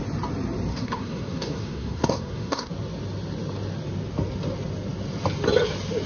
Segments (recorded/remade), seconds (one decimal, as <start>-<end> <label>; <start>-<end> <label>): 0.0-0.7 recorded; 0.7-2.7 remade; 2.7-6.1 recorded